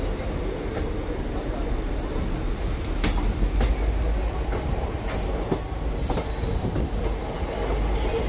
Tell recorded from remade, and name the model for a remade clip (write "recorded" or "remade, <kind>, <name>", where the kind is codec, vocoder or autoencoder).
recorded